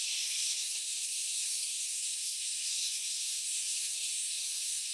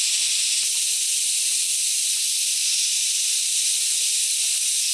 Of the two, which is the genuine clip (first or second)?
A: second